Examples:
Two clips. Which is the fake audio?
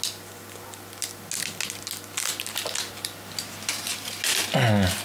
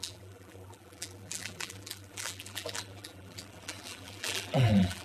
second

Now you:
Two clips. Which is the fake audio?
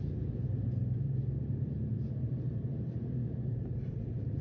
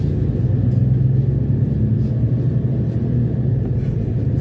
first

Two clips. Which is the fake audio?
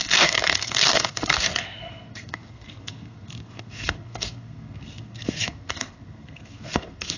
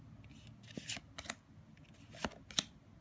first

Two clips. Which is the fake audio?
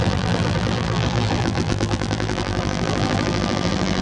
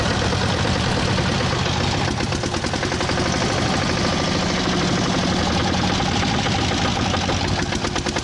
first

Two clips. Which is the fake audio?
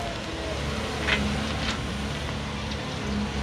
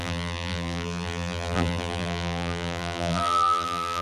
second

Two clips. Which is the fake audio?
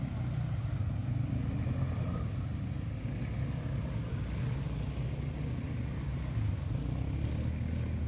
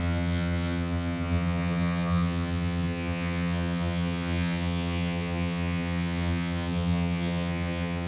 second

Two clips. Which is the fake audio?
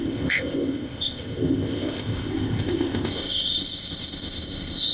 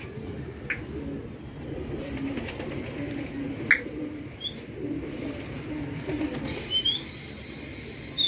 first